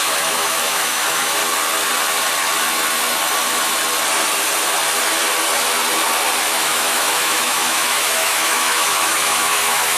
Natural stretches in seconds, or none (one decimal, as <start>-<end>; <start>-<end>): 1.4-6.5